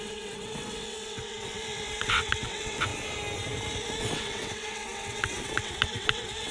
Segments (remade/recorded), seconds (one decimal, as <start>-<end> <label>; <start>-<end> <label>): 0.0-2.9 remade; 2.9-4.0 recorded; 4.0-6.5 remade